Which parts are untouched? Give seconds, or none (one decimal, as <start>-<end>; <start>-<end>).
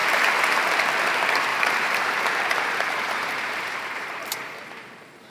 0.6-1.5; 4.7-5.3